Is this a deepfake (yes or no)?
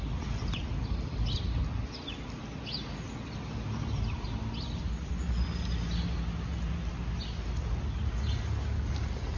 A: no